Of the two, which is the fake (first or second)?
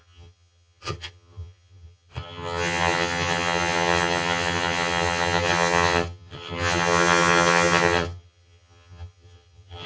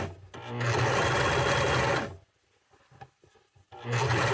first